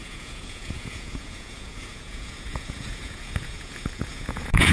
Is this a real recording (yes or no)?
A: no